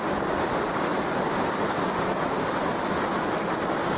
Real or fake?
real